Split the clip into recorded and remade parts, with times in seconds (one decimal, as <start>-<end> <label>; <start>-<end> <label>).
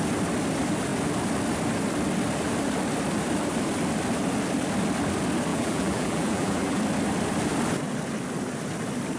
0.0-5.5 recorded; 5.5-6.8 remade; 6.8-9.2 recorded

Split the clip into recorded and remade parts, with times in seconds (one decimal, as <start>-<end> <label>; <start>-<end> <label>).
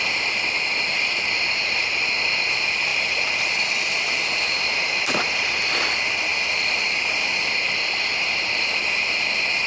0.0-6.3 recorded; 6.3-7.4 remade; 7.4-9.7 recorded